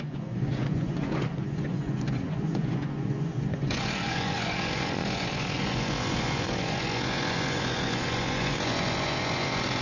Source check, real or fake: fake